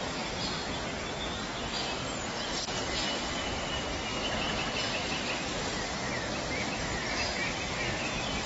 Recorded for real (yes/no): yes